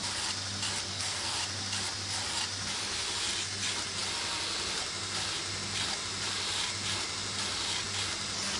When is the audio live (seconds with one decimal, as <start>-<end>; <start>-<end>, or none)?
0.0-0.9; 1.4-8.6